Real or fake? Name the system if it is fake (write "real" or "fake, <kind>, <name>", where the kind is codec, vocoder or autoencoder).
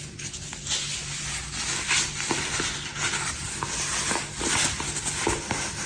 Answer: real